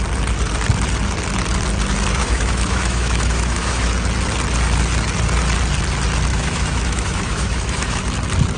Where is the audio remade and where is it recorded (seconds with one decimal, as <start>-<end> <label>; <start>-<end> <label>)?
0.0-2.2 recorded; 2.2-3.9 remade; 3.9-6.3 recorded; 6.3-8.0 remade; 8.0-8.6 recorded